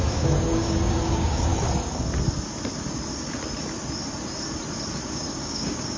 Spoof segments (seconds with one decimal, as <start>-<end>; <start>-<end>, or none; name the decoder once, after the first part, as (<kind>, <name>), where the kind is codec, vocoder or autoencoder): 0.0-1.5 (codec, DAC); 5.1-6.0